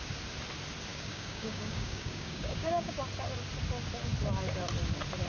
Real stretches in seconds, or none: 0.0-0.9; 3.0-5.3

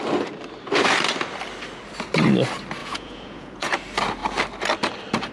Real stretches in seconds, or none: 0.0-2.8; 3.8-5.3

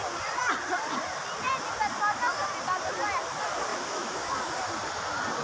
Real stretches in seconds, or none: 0.0-3.7; 4.5-5.4

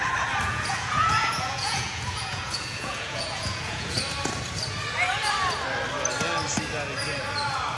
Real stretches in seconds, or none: 0.0-0.5; 4.0-7.8